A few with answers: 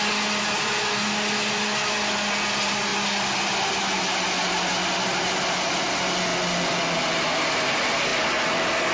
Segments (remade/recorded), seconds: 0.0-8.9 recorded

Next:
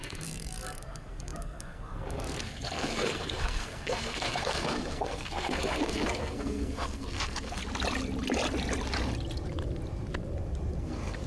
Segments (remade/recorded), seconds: 0.0-7.6 remade; 7.6-10.8 recorded; 10.8-11.3 remade

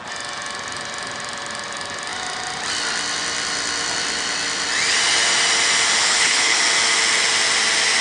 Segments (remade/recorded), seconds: 0.0-6.0 recorded; 6.0-6.6 remade; 6.6-8.0 recorded

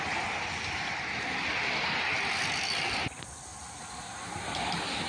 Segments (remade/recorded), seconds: 0.0-5.1 recorded

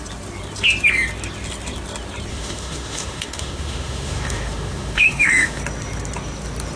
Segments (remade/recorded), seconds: 0.0-2.3 recorded; 2.3-5.6 remade; 5.6-6.8 recorded

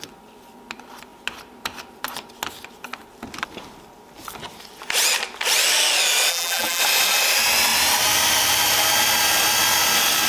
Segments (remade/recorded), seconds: 0.0-6.3 recorded; 6.3-6.8 remade; 6.8-10.3 recorded

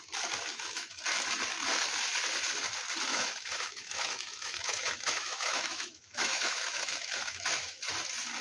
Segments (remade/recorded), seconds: 0.0-0.5 recorded; 0.5-1.0 remade; 1.0-3.1 recorded; 3.1-7.8 remade; 7.8-8.4 recorded

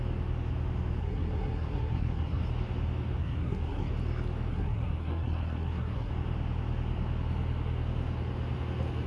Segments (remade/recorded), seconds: 0.0-1.0 recorded; 1.0-2.4 remade; 2.4-3.2 recorded; 3.2-3.9 remade; 3.9-4.5 recorded; 4.5-6.1 remade; 6.1-9.1 recorded